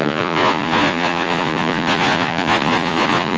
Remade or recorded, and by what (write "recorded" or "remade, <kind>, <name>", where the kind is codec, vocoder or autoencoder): remade, vocoder, Vocos